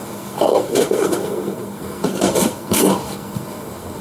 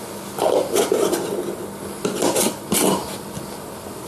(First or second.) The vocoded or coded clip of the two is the first